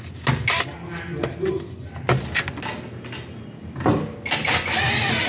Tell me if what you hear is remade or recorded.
recorded